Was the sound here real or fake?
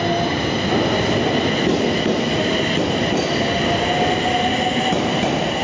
real